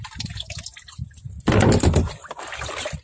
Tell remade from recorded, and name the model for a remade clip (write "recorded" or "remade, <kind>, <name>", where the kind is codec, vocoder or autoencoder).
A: recorded